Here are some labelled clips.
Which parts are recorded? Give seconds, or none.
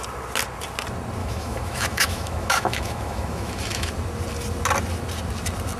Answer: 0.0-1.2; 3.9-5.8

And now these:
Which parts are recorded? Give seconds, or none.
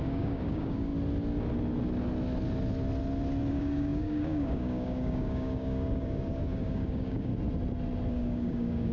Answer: 0.9-3.5; 7.3-8.1